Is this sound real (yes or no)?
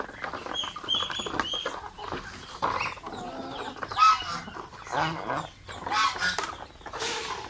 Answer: yes